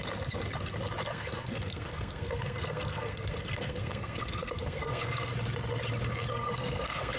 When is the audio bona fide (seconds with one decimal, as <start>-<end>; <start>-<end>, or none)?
0.0-1.1; 5.3-6.3